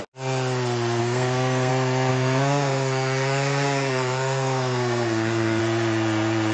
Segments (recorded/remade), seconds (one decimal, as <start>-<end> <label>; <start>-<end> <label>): 0.0-1.0 recorded; 1.0-1.7 remade; 1.7-2.1 recorded; 2.1-5.6 remade; 5.6-6.5 recorded